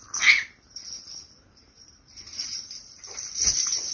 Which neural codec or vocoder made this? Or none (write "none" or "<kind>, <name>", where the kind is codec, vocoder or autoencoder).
none